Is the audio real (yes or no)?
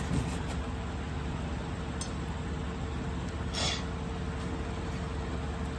yes